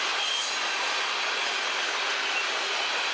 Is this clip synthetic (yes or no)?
no